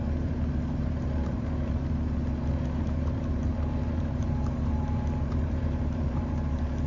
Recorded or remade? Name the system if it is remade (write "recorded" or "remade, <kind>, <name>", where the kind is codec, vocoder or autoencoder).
remade, vocoder, BigVGAN v2